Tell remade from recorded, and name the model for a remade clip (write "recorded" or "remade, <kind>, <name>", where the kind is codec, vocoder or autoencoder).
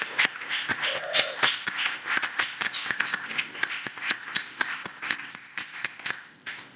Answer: remade, codec, ZipCodec